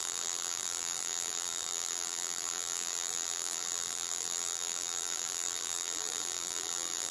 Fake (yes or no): yes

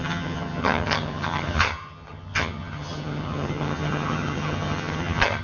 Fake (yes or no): yes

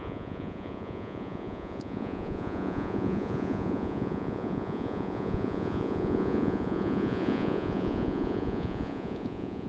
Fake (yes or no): yes